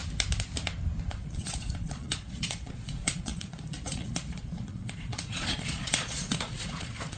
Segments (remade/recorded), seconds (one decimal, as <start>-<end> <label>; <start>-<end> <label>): 0.0-1.1 recorded; 1.1-7.2 remade